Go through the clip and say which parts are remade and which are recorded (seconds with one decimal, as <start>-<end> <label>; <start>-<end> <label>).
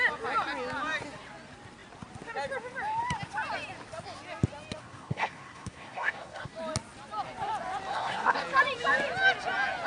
0.0-4.8 recorded; 4.8-6.5 remade; 6.5-7.9 recorded; 7.9-8.4 remade; 8.4-9.9 recorded